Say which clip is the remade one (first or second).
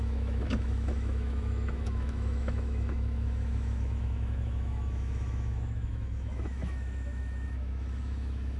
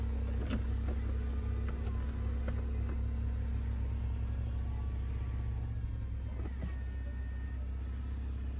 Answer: first